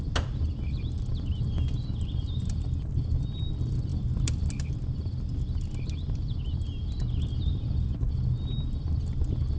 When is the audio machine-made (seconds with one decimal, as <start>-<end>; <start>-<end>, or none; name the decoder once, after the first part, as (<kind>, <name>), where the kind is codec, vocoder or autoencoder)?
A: none